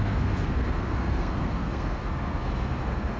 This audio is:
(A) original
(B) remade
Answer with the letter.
B